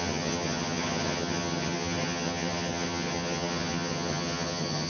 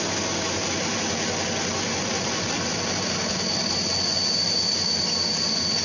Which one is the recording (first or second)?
second